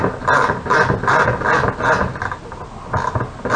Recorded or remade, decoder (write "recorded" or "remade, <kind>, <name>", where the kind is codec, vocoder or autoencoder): recorded